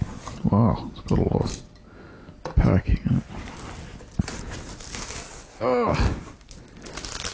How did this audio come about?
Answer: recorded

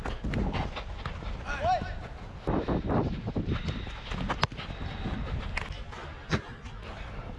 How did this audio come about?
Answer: recorded